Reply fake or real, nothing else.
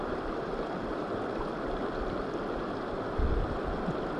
real